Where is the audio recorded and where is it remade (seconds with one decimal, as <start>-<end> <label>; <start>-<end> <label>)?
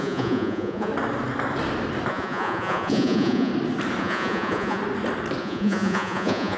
0.0-0.9 remade; 0.9-2.1 recorded; 2.1-3.5 remade; 3.5-4.0 recorded; 4.0-4.8 remade; 4.8-5.4 recorded; 5.4-6.6 remade